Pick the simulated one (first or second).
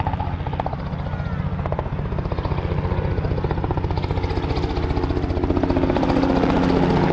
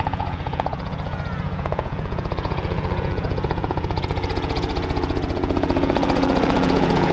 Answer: second